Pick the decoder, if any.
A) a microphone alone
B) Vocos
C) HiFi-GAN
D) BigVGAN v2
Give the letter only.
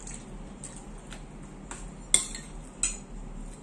A